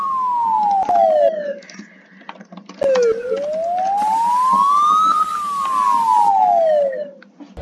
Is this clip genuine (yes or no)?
yes